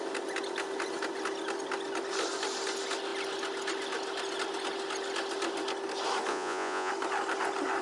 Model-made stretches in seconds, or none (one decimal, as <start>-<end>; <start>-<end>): 6.3-6.9